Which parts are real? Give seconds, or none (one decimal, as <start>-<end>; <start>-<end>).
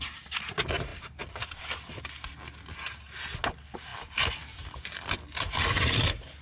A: 0.0-0.9; 2.0-3.9; 6.0-6.4